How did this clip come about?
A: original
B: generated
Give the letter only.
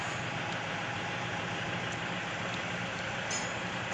A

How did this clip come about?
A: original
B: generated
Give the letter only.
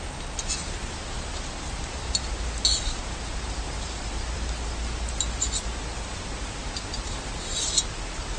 A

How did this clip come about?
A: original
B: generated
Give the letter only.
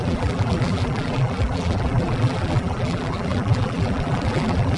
B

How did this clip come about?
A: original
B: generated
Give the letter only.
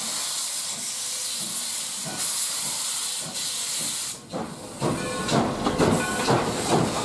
A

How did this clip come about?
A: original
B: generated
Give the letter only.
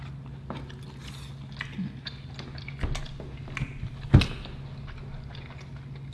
A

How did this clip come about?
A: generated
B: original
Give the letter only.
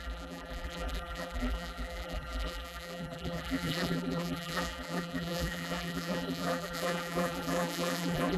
A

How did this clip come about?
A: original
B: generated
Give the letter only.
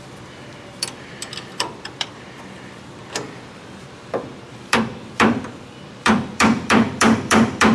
B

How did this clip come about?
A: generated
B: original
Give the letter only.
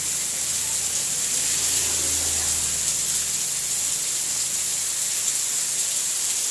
B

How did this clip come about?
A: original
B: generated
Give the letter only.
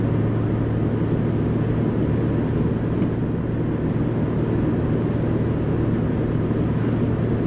A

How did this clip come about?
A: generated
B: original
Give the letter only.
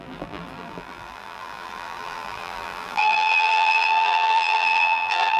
A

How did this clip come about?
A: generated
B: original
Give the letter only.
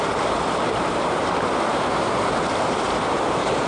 A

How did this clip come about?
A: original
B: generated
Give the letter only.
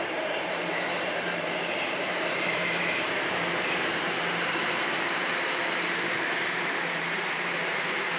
B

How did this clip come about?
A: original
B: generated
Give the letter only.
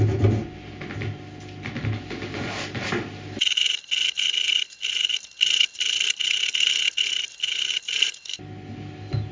A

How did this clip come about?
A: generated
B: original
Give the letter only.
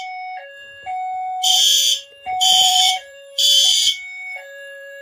A